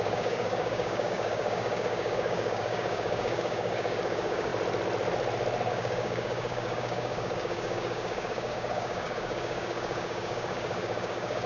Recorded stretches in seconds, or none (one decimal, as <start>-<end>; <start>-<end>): 4.5-5.7